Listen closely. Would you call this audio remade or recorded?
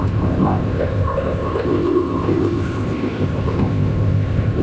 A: remade